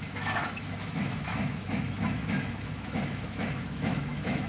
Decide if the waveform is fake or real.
fake